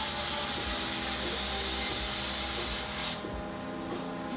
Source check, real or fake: real